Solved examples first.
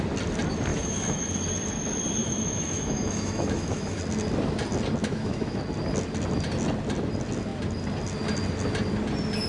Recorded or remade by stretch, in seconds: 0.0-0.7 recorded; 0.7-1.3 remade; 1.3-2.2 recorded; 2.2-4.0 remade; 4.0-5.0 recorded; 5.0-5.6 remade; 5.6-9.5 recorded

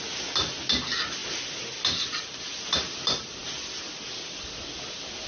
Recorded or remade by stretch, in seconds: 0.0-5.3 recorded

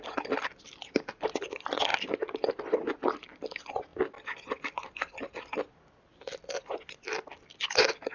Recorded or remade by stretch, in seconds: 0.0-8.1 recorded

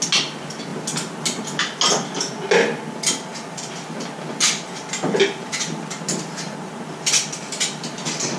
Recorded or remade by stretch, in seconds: 0.0-3.3 recorded; 3.3-8.4 remade

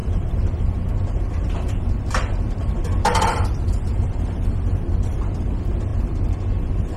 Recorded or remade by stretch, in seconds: 0.0-4.2 remade; 4.2-7.0 recorded

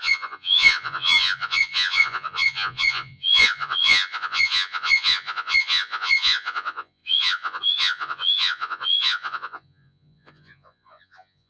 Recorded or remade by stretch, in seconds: 0.0-11.5 remade

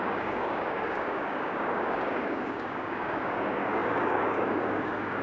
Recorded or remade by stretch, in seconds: 0.0-5.2 remade